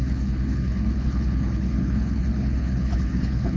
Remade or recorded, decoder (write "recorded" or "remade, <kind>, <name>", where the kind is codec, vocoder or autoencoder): remade, codec, HILCodec